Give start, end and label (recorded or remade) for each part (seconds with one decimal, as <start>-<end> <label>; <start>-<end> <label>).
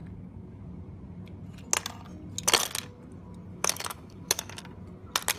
0.0-3.5 recorded; 3.5-4.6 remade; 4.6-5.4 recorded